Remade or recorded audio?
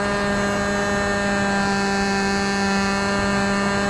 recorded